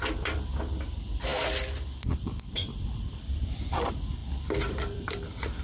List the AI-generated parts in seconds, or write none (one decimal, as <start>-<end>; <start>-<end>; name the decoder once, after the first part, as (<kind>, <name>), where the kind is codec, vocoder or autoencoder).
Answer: 0.0-5.6 (vocoder, BigVGAN v2)